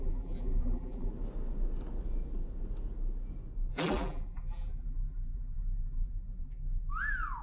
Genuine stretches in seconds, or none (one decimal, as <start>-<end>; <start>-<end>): 1.1-3.7; 6.9-7.4